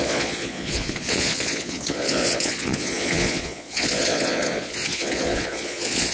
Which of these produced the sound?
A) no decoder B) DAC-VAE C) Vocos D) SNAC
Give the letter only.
C